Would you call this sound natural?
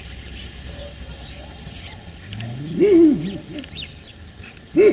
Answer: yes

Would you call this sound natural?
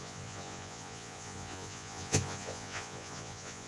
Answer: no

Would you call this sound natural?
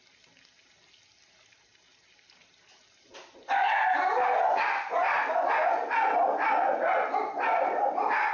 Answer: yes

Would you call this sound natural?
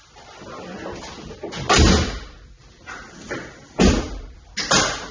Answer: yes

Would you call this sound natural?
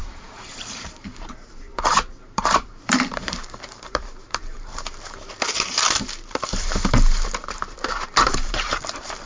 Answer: no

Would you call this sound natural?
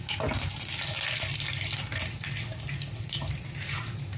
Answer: yes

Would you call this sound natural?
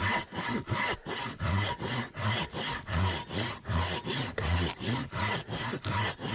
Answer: yes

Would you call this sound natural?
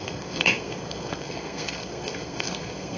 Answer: no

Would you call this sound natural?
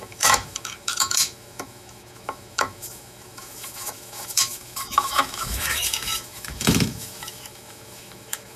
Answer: no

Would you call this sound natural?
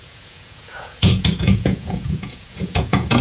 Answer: no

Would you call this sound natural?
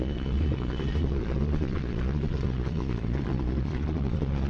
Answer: no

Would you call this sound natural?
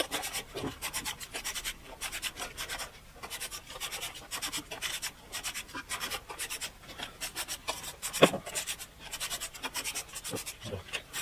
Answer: no